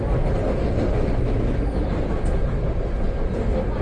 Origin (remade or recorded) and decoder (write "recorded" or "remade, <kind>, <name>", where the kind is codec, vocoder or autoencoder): recorded